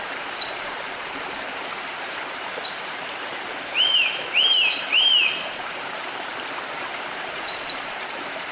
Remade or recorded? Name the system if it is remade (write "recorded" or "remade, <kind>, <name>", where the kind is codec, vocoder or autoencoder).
remade, vocoder, BigVGAN v2